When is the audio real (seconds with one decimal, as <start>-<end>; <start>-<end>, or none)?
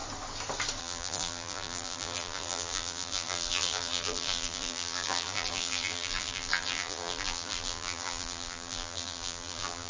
0.0-0.8